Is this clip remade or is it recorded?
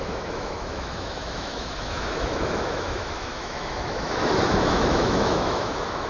remade